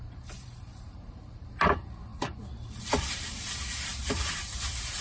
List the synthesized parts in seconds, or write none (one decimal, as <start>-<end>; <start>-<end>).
0.0-5.0